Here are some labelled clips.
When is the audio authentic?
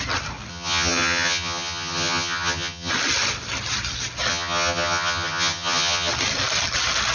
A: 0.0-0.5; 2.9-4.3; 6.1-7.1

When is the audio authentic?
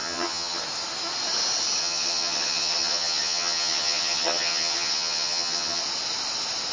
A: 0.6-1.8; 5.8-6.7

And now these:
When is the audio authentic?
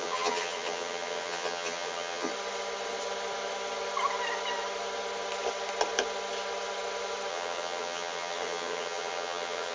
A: 2.3-7.3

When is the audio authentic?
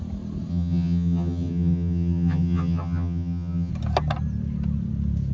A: 0.0-0.5; 3.7-5.3